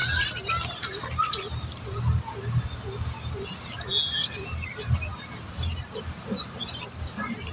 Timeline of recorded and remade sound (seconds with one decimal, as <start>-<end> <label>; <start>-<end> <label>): 0.0-7.5 recorded